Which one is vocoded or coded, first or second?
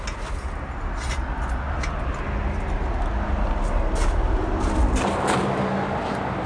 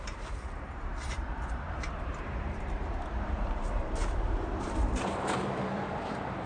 second